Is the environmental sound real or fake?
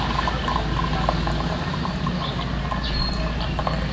real